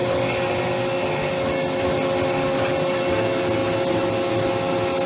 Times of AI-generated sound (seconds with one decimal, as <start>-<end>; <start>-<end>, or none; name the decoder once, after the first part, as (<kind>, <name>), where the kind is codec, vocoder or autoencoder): none

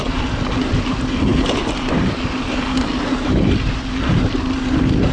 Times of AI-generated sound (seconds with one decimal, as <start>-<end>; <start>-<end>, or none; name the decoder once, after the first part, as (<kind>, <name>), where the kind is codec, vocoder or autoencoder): none

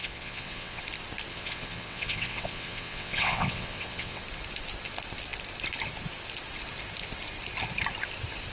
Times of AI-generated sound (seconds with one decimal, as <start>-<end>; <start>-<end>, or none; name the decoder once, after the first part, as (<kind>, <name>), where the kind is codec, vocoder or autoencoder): 0.0-0.8 (vocoder, WaveNeXt); 1.3-4.2

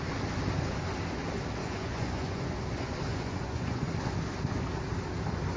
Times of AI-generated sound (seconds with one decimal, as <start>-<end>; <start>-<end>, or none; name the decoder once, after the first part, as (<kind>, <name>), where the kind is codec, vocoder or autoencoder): 1.6-2.5 (vocoder, Vocos); 3.1-3.9

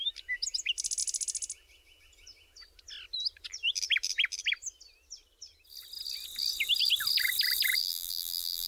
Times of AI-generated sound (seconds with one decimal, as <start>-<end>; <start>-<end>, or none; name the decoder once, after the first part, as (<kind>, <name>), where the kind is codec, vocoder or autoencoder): 7.8-8.7 (vocoder, BigVGAN v2)

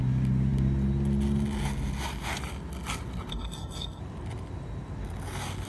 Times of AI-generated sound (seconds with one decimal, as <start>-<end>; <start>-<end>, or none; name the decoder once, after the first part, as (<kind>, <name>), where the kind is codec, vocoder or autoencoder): 3.3-4.0 (codec, SNAC)